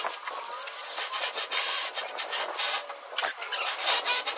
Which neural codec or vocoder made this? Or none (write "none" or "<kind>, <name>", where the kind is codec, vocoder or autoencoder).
none